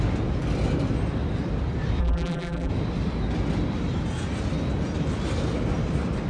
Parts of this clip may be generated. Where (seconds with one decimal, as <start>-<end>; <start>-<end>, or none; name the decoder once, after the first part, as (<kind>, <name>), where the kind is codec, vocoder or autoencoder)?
2.0-2.7 (vocoder, BigVGAN v2)